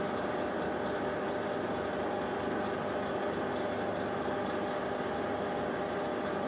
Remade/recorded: recorded